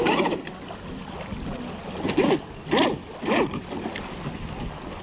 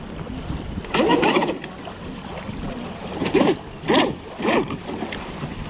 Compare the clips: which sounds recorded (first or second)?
first